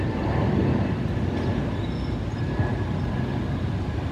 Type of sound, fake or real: real